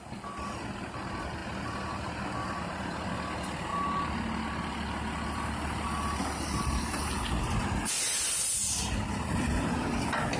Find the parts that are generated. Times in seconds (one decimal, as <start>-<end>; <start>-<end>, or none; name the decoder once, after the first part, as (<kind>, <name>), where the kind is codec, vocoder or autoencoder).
none

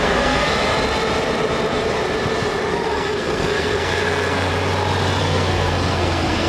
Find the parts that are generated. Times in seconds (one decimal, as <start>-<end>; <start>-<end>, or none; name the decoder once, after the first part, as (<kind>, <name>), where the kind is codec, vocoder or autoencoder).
0.0-0.5 (codec, SNAC); 2.7-4.5; 5.2-6.5

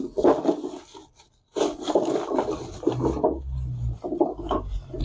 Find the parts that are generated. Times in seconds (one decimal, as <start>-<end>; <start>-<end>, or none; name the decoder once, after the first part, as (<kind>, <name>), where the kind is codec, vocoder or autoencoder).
none

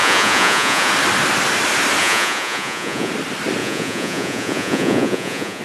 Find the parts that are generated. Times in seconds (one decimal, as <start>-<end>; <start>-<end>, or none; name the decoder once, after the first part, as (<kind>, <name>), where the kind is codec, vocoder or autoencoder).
0.0-0.9 (vocoder, Vocos); 2.0-3.1; 3.6-5.6

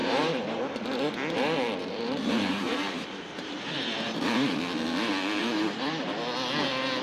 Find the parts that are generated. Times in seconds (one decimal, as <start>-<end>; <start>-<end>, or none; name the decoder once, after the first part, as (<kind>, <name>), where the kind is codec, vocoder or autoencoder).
0.0-0.6 (vocoder, BigVGAN v2); 1.8-4.6; 5.4-6.2

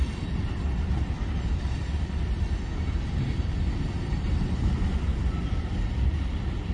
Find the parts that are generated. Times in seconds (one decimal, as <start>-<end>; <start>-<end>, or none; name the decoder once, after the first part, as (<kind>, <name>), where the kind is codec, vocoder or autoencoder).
none